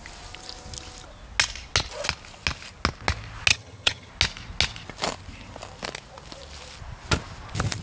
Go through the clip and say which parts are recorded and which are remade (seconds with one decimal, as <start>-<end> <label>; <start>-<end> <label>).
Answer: 0.0-3.5 recorded; 3.5-4.1 remade; 4.1-7.8 recorded